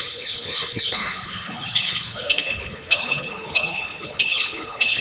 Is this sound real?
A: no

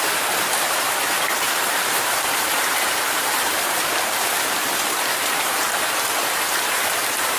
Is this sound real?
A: no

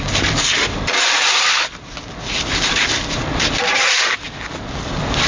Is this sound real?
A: no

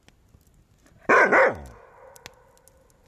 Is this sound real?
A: yes